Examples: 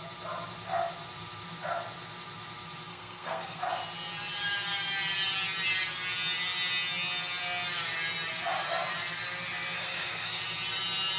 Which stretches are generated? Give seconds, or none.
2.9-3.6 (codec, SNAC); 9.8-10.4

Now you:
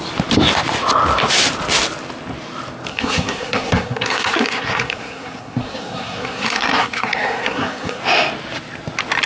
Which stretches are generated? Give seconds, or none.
2.9-8.0 (codec, SNAC)

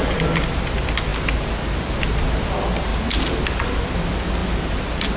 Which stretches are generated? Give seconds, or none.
none

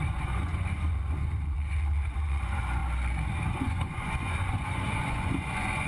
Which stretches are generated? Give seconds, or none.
0.0-2.8 (vocoder, Vocos); 3.5-5.9